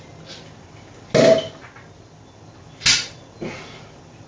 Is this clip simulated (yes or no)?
no